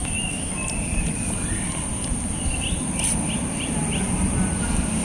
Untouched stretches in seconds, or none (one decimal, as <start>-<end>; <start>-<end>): 0.5-5.0